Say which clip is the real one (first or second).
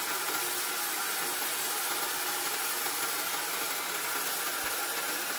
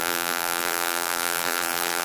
first